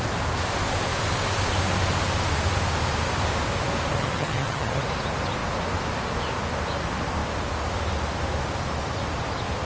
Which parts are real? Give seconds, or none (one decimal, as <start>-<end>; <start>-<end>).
0.0-4.0; 4.8-9.6